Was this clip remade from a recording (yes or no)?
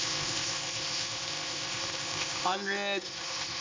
yes